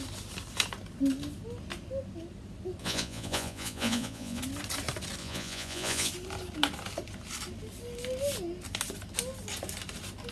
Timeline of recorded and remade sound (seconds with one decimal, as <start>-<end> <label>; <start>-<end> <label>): 0.0-2.8 recorded; 2.8-4.4 remade; 4.4-5.2 recorded; 5.2-6.1 remade; 6.1-10.3 recorded